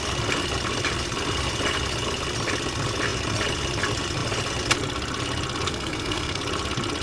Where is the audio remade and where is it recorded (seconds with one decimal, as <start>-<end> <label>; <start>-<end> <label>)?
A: 0.0-5.7 recorded; 5.7-6.4 remade; 6.4-7.0 recorded